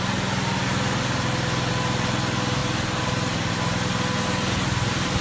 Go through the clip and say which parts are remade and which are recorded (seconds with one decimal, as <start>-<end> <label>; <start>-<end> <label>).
0.0-5.2 recorded